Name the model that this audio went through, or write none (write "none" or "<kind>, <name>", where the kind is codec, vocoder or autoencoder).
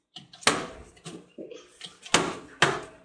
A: none